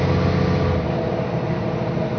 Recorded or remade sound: recorded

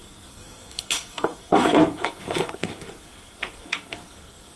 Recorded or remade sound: remade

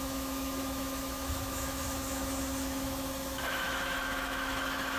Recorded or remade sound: remade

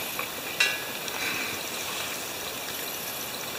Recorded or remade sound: recorded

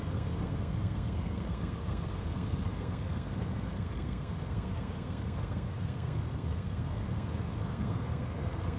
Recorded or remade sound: remade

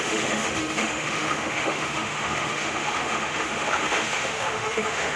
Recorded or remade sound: remade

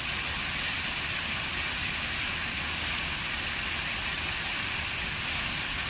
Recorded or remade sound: recorded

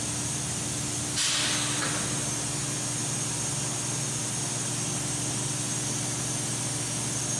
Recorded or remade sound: recorded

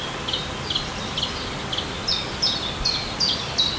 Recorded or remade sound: recorded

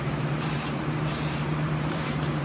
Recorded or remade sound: remade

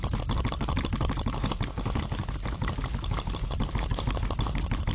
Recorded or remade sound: recorded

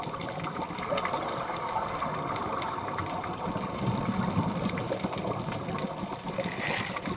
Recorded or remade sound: recorded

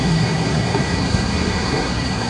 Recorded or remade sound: remade